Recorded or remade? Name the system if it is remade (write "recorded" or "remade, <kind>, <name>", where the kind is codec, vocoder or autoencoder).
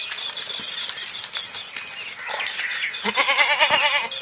recorded